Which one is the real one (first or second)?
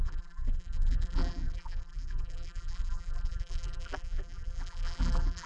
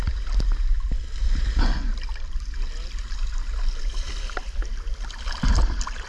second